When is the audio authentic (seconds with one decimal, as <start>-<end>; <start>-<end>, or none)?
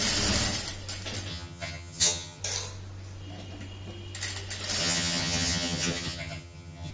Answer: 0.0-1.3; 2.4-4.8